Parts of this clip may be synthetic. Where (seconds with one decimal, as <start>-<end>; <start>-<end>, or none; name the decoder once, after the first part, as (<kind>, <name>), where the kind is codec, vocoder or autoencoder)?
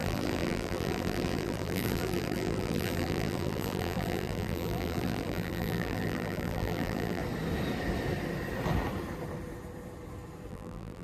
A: 0.0-7.2 (vocoder, BigVGAN v2); 10.5-11.0